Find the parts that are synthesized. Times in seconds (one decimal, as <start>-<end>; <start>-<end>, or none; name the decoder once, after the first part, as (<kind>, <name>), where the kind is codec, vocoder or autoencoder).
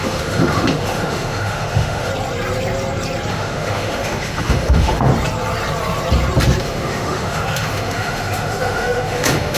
0.0-2.1 (autoencoder, DAC-VAE); 3.3-5.1; 6.6-9.6